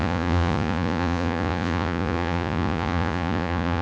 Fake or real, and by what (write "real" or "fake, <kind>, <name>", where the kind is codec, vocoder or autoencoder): fake, vocoder, Vocos